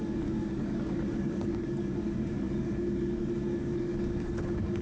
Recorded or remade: remade